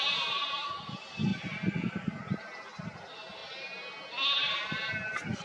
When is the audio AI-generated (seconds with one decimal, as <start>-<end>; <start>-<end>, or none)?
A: none